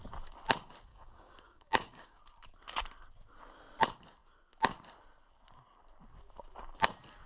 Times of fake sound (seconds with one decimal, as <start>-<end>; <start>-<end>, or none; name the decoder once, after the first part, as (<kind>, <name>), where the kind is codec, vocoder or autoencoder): 0.9-2.2 (codec, DAC)